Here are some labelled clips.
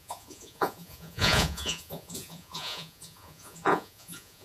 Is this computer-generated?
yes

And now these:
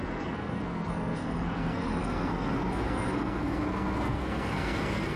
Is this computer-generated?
yes